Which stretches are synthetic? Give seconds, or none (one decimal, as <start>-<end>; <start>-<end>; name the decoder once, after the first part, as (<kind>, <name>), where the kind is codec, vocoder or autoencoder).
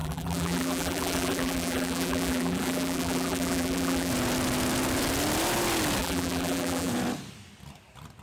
0.0-4.1 (vocoder, BigVGAN v2); 6.0-6.9